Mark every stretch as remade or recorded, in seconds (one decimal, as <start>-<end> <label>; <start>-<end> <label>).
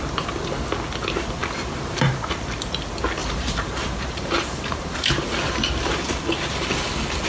0.0-1.4 recorded; 1.4-2.2 remade; 2.2-3.2 recorded; 3.2-6.0 remade; 6.0-7.3 recorded